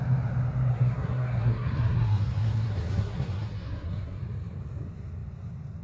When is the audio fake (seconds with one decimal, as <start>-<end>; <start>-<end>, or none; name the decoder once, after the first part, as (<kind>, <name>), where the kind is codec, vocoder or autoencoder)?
0.7-4.2 (codec, SNAC)